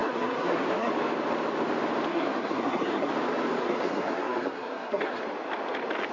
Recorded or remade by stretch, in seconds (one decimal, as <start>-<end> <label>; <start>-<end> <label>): 0.0-0.9 remade; 0.9-2.1 recorded; 2.1-3.1 remade; 3.1-3.6 recorded; 3.6-5.2 remade; 5.2-6.1 recorded